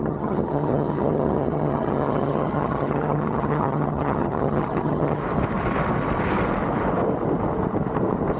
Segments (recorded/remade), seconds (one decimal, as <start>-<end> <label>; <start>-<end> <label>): 0.0-5.2 remade; 5.2-8.4 recorded